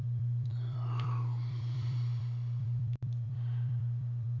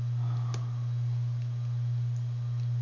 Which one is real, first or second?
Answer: second